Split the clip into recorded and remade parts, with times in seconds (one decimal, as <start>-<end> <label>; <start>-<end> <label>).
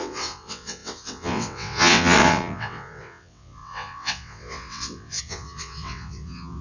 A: 0.0-6.6 remade